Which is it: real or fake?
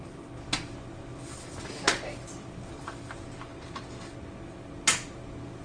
real